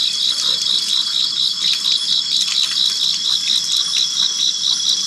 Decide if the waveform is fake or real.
fake